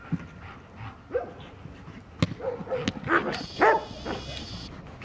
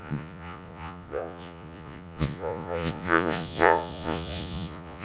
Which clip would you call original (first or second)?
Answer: first